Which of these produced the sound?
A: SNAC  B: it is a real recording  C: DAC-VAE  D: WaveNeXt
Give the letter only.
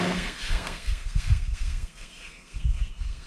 A